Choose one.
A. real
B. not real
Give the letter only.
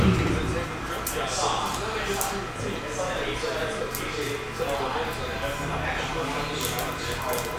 A